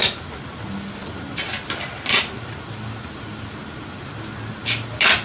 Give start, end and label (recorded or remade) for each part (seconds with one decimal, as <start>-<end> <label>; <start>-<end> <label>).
0.0-5.2 recorded